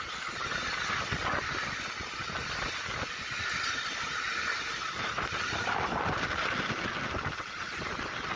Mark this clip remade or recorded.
recorded